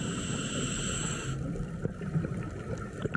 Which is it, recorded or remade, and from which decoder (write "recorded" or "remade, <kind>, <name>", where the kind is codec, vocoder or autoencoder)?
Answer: recorded